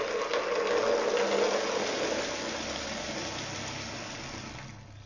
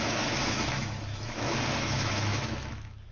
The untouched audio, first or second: first